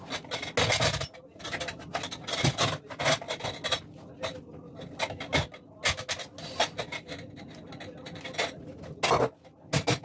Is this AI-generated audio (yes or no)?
no